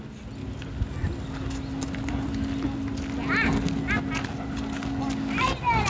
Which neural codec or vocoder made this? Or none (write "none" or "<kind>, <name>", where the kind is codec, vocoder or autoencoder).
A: none